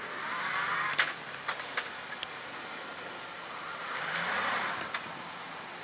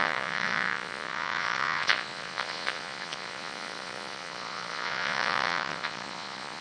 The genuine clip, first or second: first